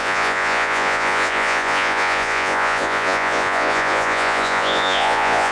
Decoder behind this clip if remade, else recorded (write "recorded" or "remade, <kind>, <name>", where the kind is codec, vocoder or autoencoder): remade, vocoder, Vocos